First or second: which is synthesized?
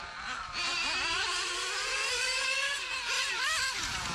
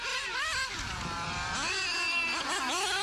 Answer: first